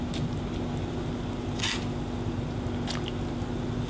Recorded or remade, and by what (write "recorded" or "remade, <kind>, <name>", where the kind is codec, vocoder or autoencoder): recorded